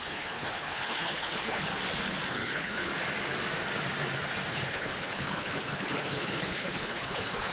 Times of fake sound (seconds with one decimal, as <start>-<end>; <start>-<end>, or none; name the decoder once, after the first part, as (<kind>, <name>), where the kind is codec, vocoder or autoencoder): 0.0-1.7 (codec, HILCodec); 2.3-2.9; 4.5-7.5